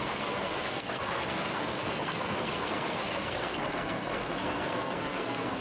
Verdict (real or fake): fake